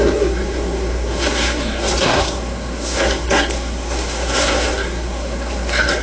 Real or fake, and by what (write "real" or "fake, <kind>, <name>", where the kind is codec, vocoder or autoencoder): fake, codec, SNAC